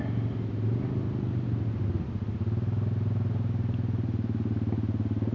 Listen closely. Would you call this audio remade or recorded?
recorded